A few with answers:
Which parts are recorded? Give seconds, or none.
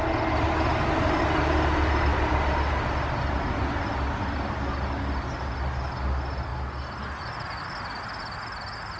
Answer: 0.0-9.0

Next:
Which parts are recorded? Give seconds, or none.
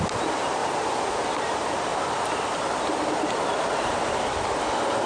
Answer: 0.0-1.9; 4.6-5.1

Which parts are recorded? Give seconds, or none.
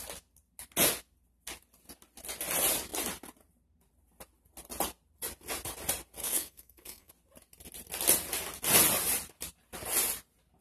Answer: 0.0-6.2; 7.1-10.6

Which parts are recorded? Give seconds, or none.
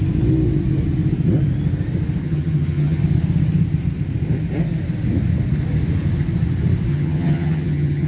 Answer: 0.0-2.2; 3.0-6.9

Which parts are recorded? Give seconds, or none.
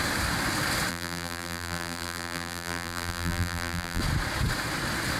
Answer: 0.0-0.9; 4.0-5.2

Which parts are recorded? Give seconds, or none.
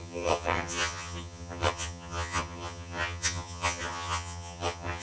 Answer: none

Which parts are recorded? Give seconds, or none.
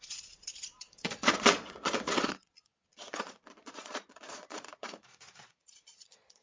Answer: none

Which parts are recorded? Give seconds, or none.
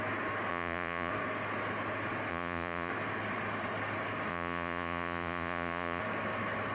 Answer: 0.0-0.5; 1.1-2.3; 2.9-4.3; 6.0-6.7